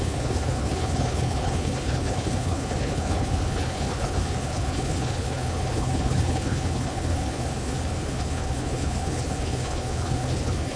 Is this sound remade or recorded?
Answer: remade